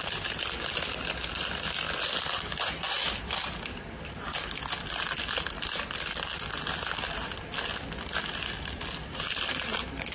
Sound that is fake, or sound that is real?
real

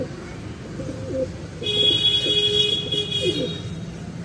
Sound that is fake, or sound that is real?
real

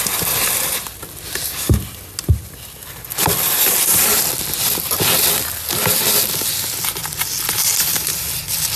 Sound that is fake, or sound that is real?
real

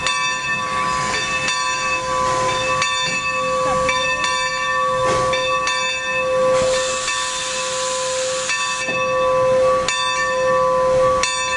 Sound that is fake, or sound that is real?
real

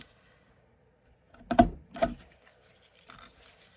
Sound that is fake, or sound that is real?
real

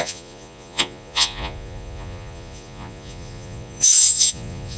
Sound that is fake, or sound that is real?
fake